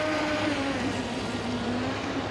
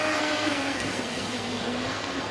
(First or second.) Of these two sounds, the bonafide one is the first